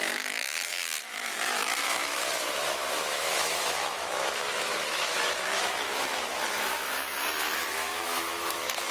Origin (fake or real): fake